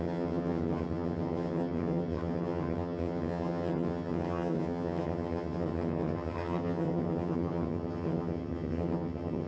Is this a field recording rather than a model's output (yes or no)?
no